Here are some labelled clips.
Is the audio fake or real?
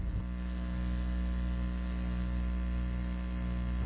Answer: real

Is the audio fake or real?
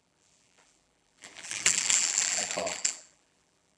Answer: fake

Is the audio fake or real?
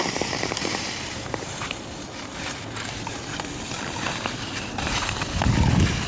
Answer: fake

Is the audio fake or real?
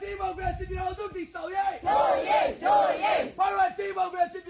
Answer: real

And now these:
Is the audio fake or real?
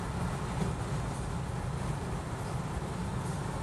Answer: real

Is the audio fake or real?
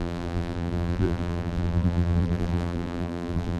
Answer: fake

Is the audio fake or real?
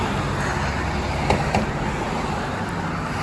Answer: real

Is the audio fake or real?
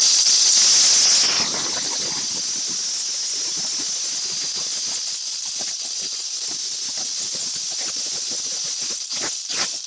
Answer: real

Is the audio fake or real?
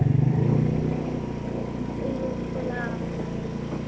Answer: real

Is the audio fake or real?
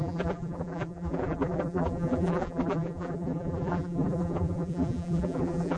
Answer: fake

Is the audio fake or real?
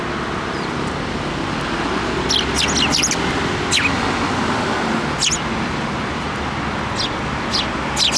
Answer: real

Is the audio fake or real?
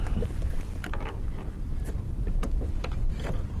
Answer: fake